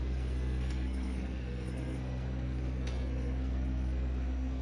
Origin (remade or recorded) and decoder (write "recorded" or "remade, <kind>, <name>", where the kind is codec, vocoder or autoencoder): remade, codec, SNAC